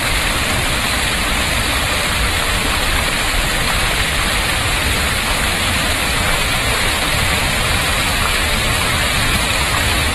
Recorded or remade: remade